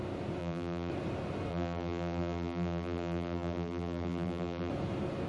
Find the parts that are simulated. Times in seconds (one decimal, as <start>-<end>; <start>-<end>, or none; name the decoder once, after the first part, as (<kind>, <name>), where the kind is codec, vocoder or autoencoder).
0.4-0.9 (vocoder, BigVGAN v2); 1.5-4.7